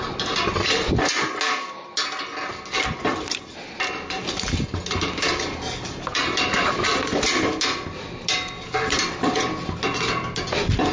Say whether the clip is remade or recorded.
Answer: recorded